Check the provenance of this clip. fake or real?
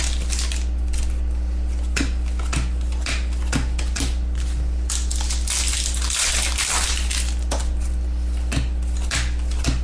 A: real